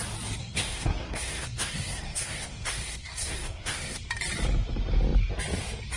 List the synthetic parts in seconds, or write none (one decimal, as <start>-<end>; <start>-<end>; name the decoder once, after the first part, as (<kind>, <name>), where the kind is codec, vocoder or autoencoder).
0.4-4.0 (codec, SNAC)